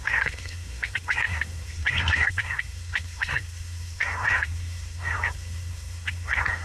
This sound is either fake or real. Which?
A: fake